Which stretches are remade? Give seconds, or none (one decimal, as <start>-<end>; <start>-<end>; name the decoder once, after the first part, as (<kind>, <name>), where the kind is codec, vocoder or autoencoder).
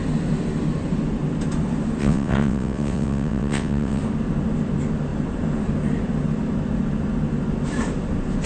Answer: 2.0-4.0 (vocoder, WaveNeXt)